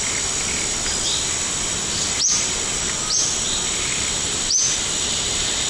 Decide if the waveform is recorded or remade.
recorded